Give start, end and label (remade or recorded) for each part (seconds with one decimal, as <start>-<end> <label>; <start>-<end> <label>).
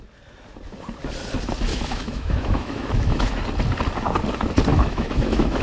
0.0-1.7 recorded; 1.7-3.4 remade; 3.4-4.7 recorded; 4.7-5.6 remade